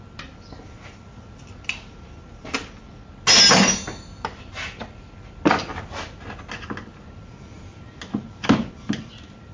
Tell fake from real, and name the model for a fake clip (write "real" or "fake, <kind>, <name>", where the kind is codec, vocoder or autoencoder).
real